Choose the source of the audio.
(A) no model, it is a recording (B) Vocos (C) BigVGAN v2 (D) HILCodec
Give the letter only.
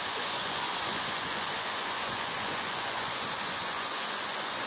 B